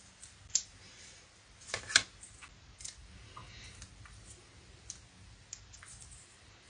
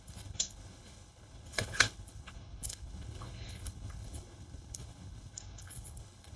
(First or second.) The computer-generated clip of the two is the second